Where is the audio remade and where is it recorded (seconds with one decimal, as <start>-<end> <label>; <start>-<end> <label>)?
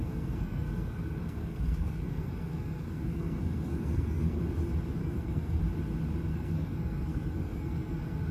0.0-4.4 remade; 4.4-5.0 recorded; 5.0-5.6 remade; 5.6-6.3 recorded; 6.3-8.3 remade